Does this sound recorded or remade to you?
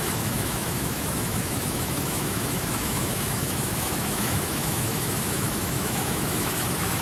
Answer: remade